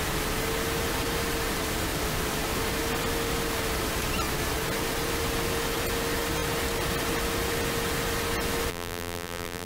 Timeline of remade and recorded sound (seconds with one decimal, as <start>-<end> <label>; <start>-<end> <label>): 0.0-8.7 recorded; 8.7-9.7 remade